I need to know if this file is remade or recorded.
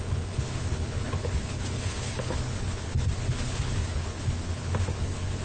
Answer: remade